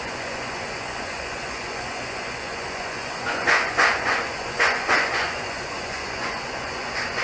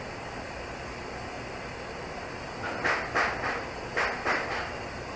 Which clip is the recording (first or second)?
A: second